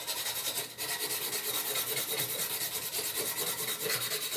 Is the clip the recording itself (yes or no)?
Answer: yes